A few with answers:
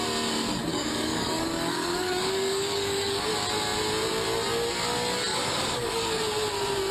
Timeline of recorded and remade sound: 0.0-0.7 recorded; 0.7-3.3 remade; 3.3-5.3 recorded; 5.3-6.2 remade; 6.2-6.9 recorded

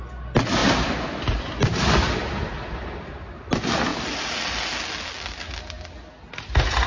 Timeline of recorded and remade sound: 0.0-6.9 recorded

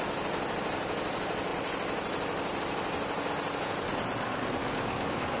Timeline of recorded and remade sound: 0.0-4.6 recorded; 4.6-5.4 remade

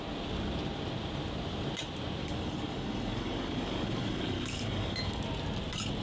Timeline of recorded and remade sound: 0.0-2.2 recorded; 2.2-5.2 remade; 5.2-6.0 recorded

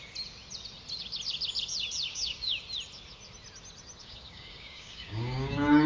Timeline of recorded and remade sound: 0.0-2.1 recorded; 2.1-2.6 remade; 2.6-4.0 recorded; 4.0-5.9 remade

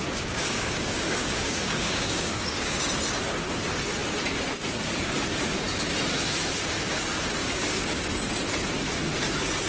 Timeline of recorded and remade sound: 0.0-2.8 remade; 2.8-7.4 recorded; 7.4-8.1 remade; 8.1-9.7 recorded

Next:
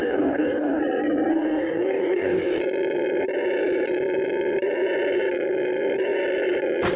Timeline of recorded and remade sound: 0.0-0.8 remade; 0.8-1.3 recorded; 1.3-2.6 remade; 2.6-7.0 recorded